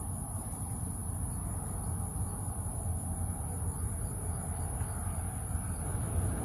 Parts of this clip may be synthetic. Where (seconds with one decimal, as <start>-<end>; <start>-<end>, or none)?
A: none